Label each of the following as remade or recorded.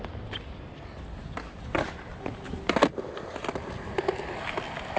recorded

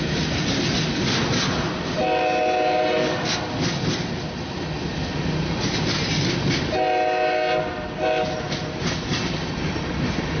recorded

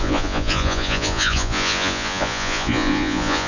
remade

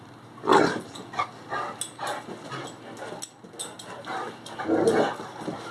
recorded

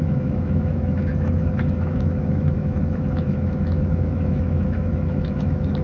remade